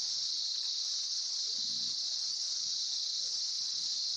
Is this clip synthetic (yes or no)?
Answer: no